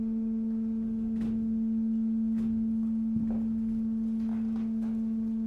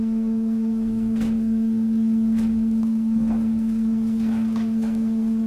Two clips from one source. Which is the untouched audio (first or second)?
first